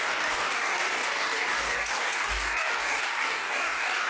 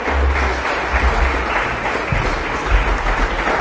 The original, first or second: second